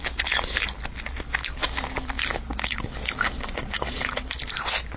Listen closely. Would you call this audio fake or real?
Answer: real